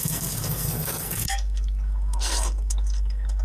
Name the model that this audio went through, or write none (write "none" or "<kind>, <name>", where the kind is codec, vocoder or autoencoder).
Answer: codec, SNAC